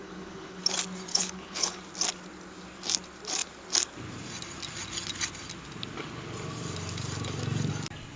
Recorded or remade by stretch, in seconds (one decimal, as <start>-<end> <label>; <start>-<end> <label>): 0.0-0.6 remade; 0.6-1.1 recorded; 1.1-1.8 remade; 1.8-8.2 recorded